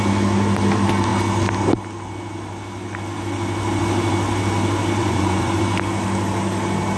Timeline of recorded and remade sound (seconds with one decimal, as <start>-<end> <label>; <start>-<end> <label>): 0.0-5.0 recorded; 5.0-5.6 remade; 5.6-7.0 recorded